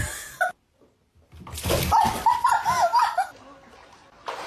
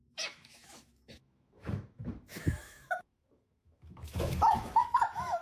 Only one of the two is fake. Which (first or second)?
second